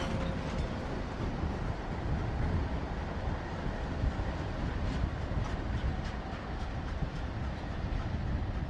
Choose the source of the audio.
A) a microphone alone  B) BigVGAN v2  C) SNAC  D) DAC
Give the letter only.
A